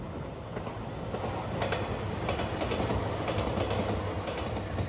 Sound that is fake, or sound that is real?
real